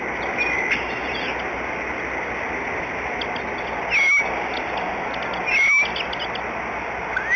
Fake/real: real